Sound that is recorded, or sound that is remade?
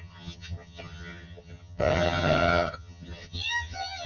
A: remade